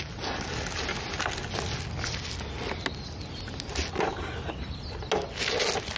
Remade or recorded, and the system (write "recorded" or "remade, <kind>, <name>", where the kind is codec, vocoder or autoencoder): recorded